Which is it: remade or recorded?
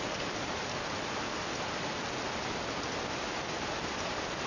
recorded